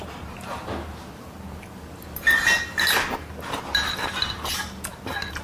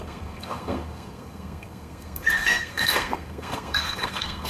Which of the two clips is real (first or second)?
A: first